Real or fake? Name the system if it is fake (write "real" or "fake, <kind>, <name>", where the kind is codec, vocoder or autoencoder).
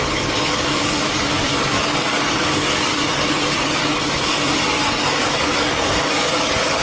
fake, codec, DAC